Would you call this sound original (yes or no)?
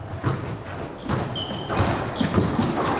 yes